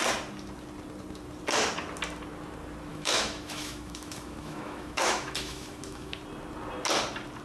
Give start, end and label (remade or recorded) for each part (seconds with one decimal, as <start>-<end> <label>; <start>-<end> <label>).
0.0-2.9 recorded; 2.9-6.2 remade; 6.2-7.4 recorded